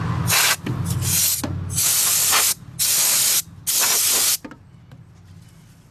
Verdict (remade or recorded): recorded